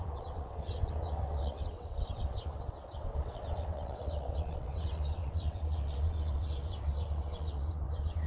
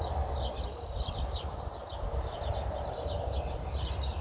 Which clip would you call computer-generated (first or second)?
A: first